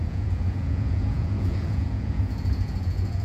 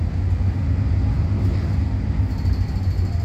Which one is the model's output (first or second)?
first